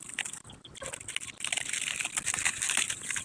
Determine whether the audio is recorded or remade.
recorded